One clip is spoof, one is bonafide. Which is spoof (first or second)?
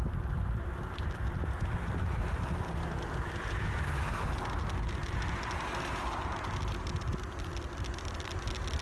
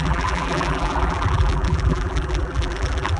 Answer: second